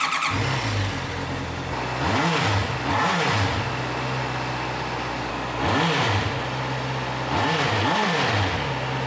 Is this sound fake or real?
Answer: real